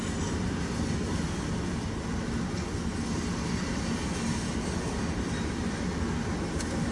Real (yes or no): yes